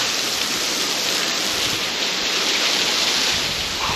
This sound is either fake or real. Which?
real